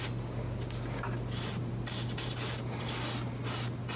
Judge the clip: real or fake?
real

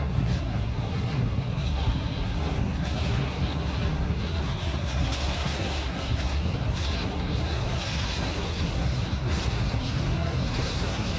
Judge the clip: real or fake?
fake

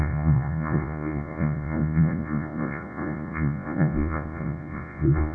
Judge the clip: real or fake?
fake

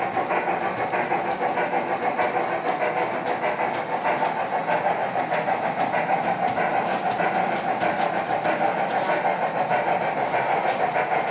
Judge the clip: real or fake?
real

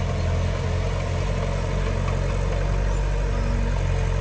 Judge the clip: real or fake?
real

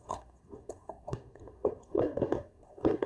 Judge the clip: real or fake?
fake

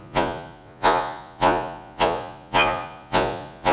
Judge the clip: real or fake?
fake